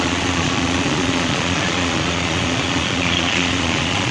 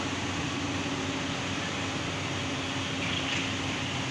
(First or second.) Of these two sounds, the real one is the second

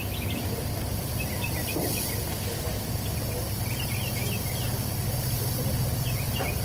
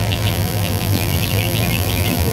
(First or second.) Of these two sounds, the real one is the first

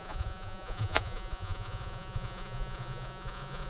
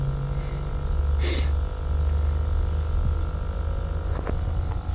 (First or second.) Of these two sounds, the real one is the second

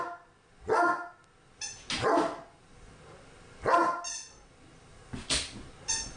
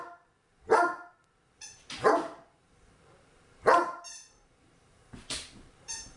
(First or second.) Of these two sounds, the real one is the first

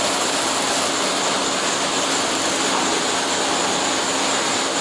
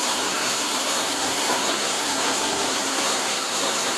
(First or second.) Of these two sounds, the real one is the first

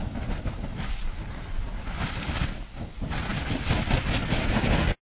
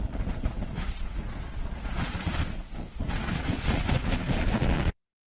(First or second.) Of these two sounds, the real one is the first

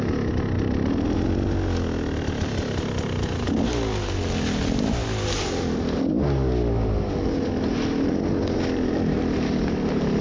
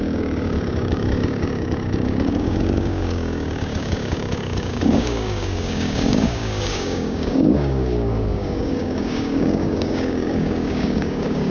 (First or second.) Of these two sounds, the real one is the first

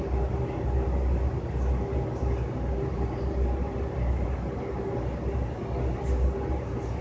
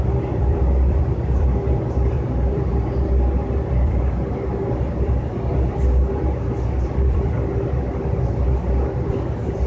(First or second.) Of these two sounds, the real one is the first